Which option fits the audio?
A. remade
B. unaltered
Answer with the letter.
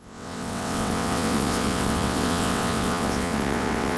A